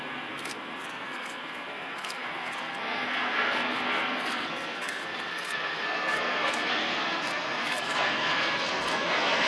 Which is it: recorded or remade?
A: remade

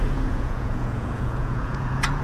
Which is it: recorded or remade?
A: remade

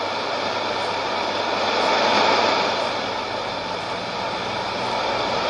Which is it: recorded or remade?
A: recorded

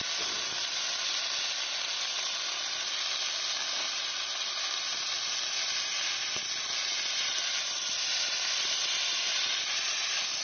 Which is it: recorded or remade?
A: recorded